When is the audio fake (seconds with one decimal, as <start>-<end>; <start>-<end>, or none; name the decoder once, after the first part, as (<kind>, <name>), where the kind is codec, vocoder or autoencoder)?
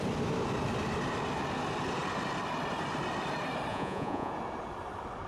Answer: 3.7-4.3 (vocoder, Vocos)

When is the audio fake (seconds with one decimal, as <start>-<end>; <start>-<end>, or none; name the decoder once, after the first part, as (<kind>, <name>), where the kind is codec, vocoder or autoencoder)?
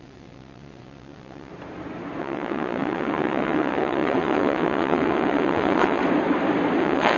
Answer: 0.0-1.5 (vocoder, WaveNeXt); 2.2-6.0; 6.8-7.2